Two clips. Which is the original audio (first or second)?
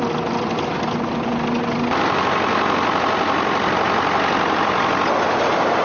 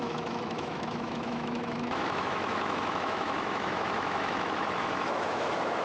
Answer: first